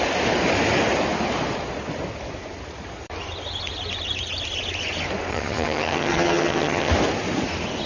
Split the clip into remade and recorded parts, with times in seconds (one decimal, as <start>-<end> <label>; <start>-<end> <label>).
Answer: 0.0-5.3 recorded; 5.3-6.9 remade; 6.9-7.9 recorded